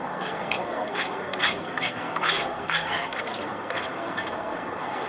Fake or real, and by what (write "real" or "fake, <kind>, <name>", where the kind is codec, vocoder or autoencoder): fake, codec, SNAC